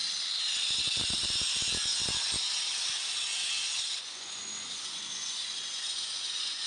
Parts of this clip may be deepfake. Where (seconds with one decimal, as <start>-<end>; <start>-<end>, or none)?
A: 4.0-6.7